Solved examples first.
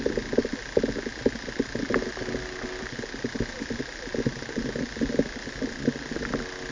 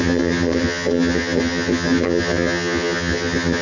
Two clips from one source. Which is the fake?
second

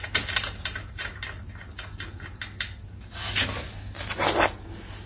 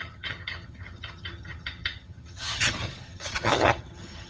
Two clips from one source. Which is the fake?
second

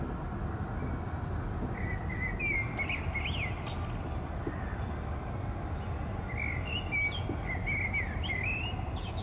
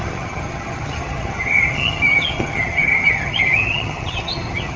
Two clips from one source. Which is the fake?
second